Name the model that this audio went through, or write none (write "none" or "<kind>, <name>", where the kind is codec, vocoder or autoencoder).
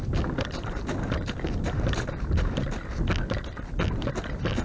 none